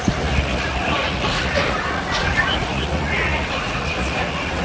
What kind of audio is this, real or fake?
fake